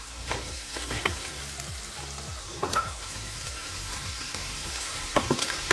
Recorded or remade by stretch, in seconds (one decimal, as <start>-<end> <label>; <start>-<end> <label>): 0.0-1.4 remade; 1.4-2.4 recorded; 2.4-5.7 remade